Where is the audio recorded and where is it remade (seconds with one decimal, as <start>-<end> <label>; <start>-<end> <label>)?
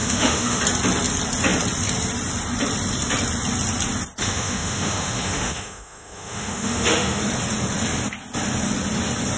0.0-0.6 remade; 0.6-4.2 recorded; 4.2-7.2 remade; 7.2-9.4 recorded